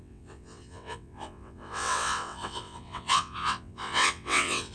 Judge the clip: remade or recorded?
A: remade